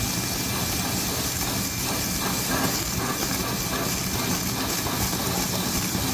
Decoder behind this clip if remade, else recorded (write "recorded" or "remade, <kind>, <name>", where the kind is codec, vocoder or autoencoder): recorded